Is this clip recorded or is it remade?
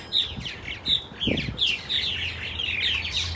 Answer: recorded